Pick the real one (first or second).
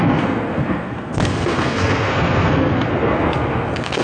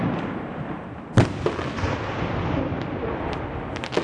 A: second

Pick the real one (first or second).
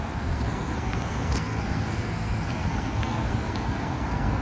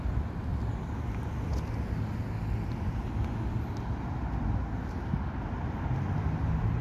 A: second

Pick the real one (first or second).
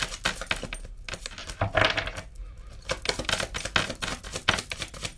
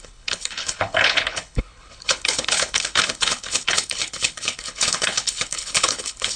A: first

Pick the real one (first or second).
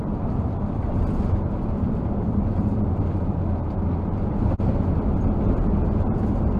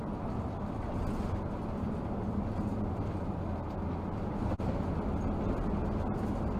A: second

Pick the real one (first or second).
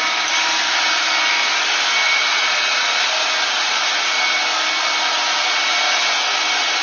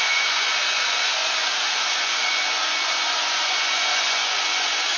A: first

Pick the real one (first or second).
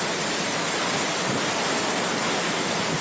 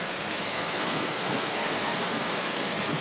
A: first